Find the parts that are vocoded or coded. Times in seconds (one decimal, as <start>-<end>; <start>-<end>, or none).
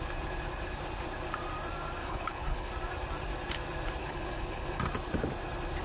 2.0-2.7; 4.0-4.8